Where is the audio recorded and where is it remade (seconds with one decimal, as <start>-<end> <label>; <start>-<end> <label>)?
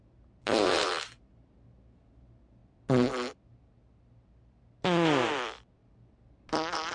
0.0-6.9 recorded